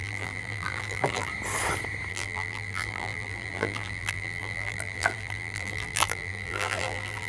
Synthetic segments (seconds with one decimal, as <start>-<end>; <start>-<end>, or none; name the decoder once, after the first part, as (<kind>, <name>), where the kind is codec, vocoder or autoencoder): 0.0-1.3 (vocoder, BigVGAN v2); 2.1-7.3